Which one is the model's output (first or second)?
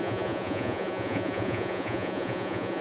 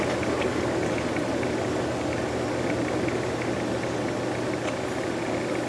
first